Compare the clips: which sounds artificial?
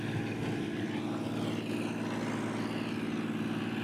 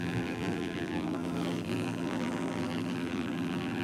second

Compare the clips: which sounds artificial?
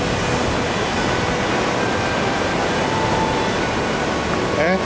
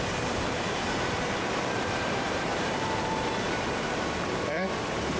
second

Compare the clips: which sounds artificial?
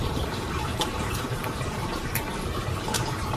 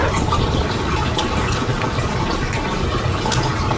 first